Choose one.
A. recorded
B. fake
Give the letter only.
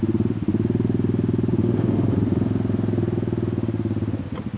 A